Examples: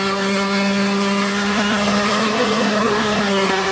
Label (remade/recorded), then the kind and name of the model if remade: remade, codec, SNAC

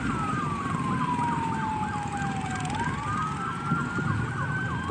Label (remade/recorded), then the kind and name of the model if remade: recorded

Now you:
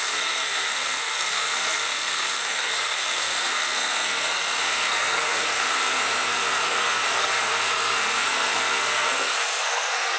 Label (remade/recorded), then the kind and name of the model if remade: remade, codec, SNAC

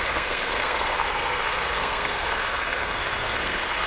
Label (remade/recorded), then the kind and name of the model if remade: remade, codec, SNAC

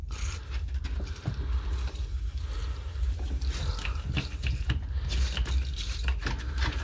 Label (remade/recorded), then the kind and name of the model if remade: recorded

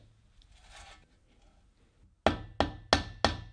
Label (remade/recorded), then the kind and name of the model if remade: recorded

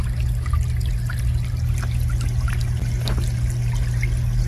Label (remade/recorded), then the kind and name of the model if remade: recorded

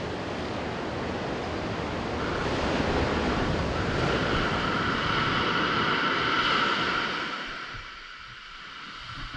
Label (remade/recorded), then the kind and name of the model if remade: recorded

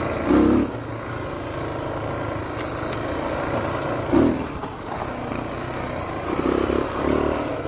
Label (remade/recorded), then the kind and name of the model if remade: recorded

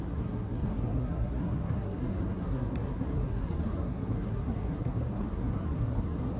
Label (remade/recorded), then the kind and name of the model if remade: remade, codec, SNAC